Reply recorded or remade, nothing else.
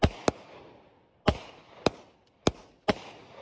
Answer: recorded